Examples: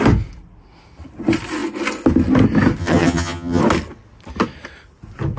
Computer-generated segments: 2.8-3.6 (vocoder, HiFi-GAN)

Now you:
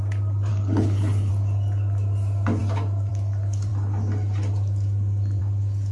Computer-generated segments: 0.5-1.3 (codec, HILCodec)

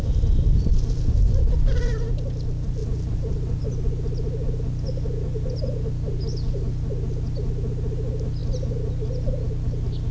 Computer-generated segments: 2.8-3.6 (vocoder, BigVGAN v2)

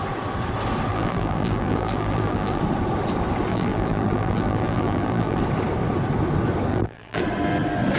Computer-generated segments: 0.9-2.6 (vocoder, BigVGAN v2); 3.5-5.4; 6.7-7.2

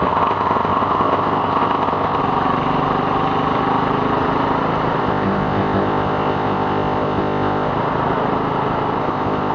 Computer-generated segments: 0.0-2.2 (codec, ZipCodec); 5.0-7.7; 9.0-9.5

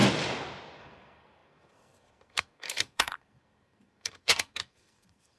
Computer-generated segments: 0.8-5.4 (codec, SNAC)

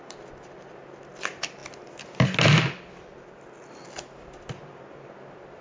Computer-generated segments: none